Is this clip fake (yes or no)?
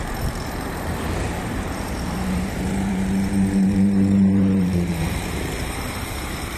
yes